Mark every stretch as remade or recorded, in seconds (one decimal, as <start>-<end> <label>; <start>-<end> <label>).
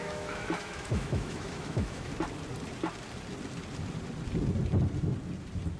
0.0-2.1 remade; 2.1-5.8 recorded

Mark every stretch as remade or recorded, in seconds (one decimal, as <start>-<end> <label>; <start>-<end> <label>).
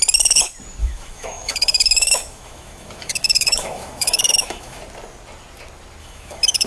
0.0-0.8 recorded; 0.8-4.8 remade; 4.8-6.0 recorded; 6.0-6.7 remade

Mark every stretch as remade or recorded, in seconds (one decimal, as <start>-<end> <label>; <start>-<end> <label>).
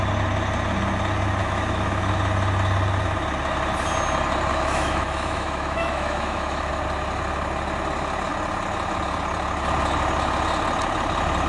0.0-1.4 recorded; 1.4-2.1 remade; 2.1-4.5 recorded; 4.5-6.7 remade; 6.7-11.5 recorded